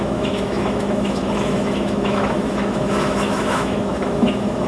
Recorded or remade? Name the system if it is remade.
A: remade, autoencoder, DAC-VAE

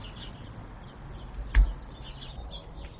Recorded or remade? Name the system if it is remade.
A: recorded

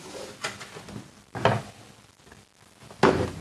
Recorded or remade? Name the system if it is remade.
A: recorded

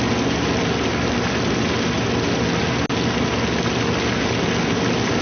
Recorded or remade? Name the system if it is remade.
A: recorded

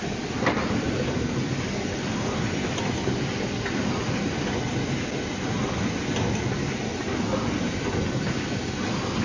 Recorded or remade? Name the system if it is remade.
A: recorded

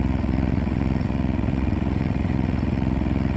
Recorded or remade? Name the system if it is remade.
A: remade, vocoder, WaveNeXt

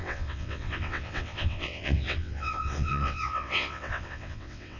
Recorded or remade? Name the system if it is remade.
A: remade, vocoder, WaveNeXt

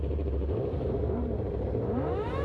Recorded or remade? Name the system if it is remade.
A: remade, vocoder, BigVGAN v2